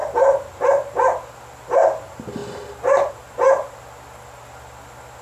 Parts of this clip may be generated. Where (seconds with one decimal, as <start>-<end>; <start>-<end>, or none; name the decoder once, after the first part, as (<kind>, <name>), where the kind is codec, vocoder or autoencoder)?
none

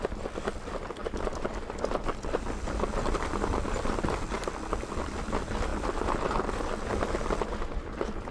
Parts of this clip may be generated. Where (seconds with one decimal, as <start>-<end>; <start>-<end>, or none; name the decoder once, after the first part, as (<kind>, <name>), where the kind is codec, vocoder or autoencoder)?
none

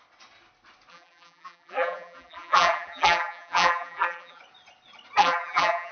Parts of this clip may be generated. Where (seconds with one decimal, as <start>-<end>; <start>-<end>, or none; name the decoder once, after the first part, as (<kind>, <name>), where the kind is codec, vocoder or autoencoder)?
0.9-4.4 (vocoder, BigVGAN v2); 5.2-5.9

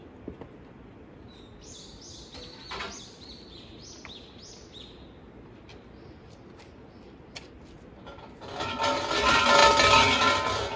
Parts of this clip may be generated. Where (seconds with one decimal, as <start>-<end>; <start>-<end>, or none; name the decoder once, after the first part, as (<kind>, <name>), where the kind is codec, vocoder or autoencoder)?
none

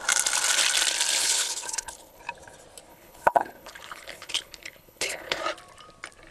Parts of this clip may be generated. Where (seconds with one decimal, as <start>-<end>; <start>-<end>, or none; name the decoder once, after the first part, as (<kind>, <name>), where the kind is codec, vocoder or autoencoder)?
1.2-2.2 (codec, HILCodec); 2.9-5.4

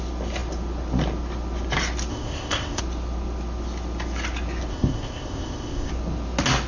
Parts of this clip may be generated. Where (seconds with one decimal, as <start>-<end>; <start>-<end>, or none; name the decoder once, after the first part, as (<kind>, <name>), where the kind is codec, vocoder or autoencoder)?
2.1-2.8 (codec, ZipCodec); 4.7-5.9